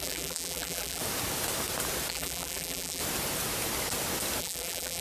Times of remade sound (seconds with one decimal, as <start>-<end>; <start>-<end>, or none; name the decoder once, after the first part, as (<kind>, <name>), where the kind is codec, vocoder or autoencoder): 0.0-1.0 (vocoder, BigVGAN v2); 2.1-3.0; 4.4-5.0